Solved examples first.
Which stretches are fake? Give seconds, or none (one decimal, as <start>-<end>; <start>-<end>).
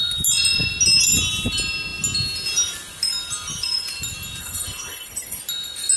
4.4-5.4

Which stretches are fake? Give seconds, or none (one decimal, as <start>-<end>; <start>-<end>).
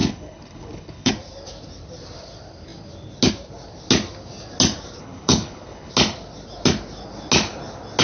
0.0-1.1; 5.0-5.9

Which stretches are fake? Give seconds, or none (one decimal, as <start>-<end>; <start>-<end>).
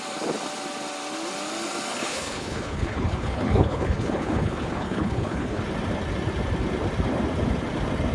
1.9-5.6